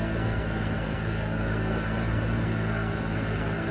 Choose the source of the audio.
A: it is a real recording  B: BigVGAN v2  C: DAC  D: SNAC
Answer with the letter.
D